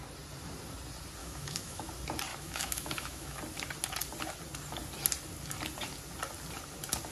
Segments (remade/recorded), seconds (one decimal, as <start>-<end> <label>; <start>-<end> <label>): 0.0-1.2 recorded; 1.2-1.9 remade; 1.9-2.3 recorded; 2.3-3.4 remade; 3.4-7.1 recorded

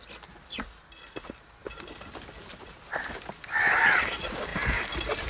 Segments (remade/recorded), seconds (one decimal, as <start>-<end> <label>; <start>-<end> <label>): 0.0-5.3 recorded

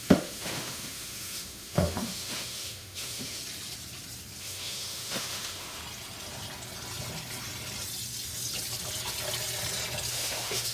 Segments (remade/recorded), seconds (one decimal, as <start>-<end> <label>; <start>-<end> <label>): 0.0-3.4 remade; 3.4-4.4 recorded; 4.4-5.8 remade; 5.8-10.1 recorded; 10.1-10.7 remade

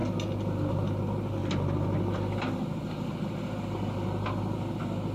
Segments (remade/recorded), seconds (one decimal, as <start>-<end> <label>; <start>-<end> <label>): 0.0-5.1 recorded

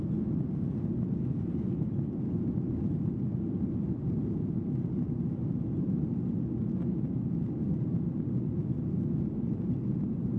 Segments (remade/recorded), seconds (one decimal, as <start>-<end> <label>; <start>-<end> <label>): 0.0-10.4 recorded

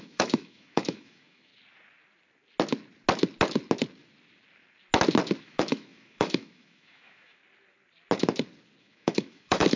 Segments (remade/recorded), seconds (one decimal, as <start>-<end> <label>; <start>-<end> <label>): 0.0-1.5 remade; 1.5-5.4 recorded; 5.4-7.4 remade; 7.4-8.8 recorded; 8.8-9.8 remade